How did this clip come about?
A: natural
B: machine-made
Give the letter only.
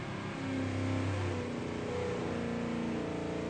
A